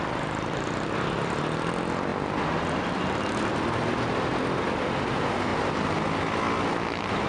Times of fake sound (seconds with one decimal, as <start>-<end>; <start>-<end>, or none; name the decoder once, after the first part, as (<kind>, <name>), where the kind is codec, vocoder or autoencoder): none